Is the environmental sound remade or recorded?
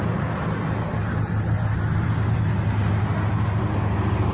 recorded